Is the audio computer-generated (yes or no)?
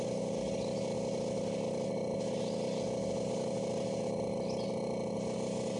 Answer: no